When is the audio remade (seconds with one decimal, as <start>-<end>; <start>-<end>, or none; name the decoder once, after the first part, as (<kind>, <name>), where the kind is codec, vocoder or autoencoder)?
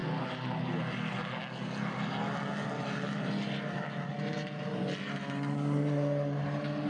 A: none